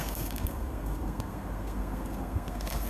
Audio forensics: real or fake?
fake